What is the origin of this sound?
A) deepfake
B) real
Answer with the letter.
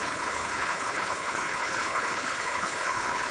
A